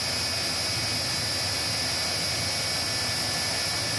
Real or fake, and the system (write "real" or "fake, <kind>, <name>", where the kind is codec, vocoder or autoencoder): real